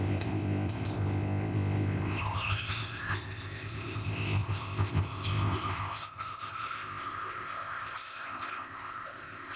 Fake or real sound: fake